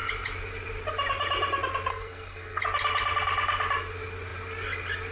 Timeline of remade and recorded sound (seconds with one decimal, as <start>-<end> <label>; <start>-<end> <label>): 0.0-1.9 recorded; 1.9-2.6 remade; 2.6-5.1 recorded